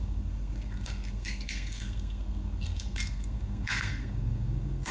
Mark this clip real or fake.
fake